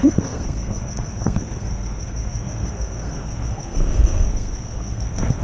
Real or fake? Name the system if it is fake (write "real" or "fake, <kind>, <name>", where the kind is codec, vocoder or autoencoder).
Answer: fake, codec, SNAC